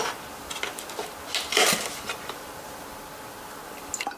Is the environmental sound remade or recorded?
recorded